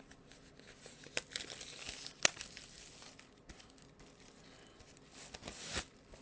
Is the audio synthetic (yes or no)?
no